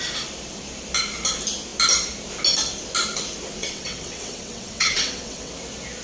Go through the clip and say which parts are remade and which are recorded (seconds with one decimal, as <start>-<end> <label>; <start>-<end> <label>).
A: 0.0-3.6 recorded; 3.6-5.5 remade; 5.5-6.0 recorded